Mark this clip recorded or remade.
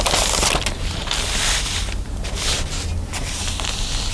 recorded